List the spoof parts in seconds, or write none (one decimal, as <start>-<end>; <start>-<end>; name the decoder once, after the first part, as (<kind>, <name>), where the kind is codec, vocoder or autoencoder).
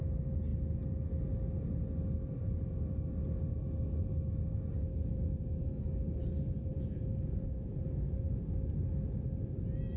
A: 4.7-5.8 (vocoder, Vocos); 6.7-8.4